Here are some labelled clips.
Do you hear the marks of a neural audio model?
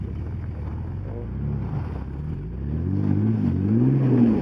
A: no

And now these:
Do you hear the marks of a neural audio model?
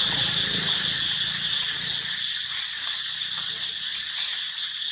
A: no